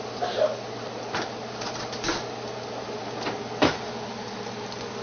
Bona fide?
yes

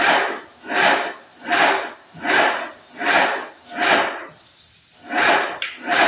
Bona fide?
yes